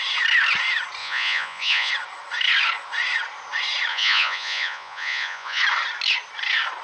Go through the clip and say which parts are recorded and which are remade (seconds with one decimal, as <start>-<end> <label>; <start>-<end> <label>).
0.0-1.0 recorded; 1.0-1.9 remade; 1.9-3.9 recorded; 3.9-5.6 remade; 5.6-6.8 recorded